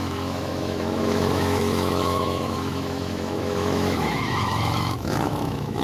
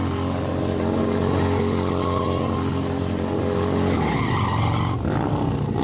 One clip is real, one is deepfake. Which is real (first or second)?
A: second